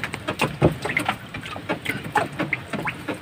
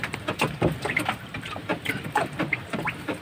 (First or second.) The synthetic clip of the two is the second